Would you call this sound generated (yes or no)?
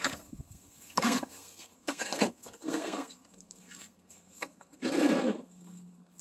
yes